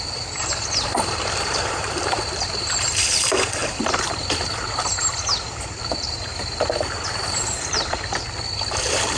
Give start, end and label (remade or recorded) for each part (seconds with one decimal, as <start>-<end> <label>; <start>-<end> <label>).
0.0-3.6 remade; 3.6-7.5 recorded; 7.5-9.2 remade